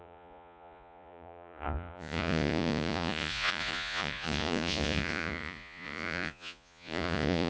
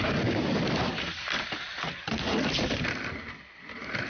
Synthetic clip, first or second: first